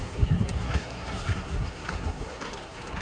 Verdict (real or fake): fake